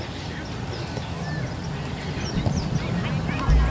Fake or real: real